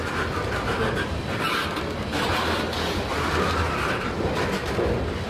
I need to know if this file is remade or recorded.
recorded